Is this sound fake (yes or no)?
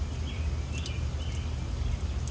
no